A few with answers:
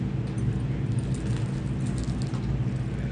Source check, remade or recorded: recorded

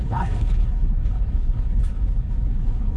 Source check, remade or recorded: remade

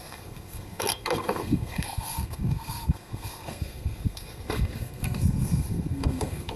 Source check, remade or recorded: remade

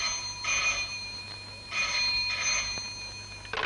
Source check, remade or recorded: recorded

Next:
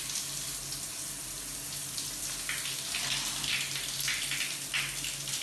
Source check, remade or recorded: recorded